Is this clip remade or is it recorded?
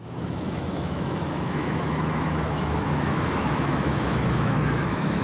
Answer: remade